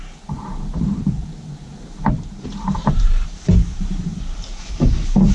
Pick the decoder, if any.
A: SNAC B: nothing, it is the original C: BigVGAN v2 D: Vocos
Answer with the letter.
C